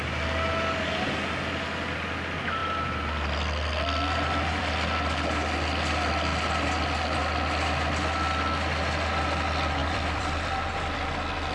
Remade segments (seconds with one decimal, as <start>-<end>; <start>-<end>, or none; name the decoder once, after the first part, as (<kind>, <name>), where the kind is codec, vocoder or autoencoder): 9.8-11.1 (vocoder, BigVGAN v2)